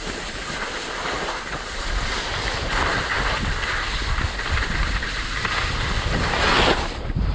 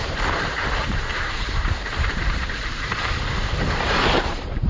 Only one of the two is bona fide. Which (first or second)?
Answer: first